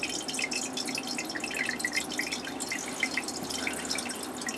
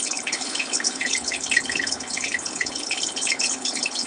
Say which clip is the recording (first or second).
first